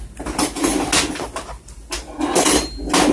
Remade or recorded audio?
recorded